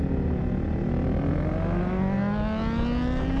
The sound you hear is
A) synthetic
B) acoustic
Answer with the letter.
B